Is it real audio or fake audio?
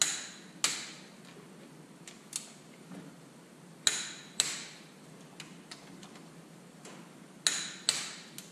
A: real